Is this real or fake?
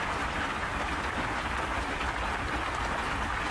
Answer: real